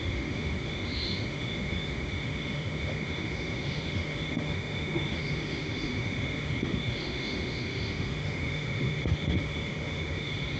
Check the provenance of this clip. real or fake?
fake